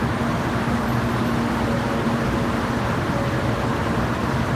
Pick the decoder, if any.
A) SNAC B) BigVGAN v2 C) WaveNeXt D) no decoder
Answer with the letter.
D